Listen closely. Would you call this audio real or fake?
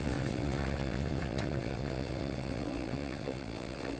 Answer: fake